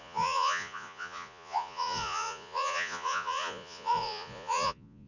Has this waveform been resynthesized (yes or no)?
yes